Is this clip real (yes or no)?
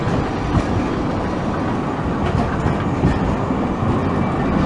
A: yes